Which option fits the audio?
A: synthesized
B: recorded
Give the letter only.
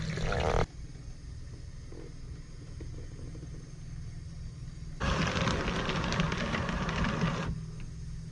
B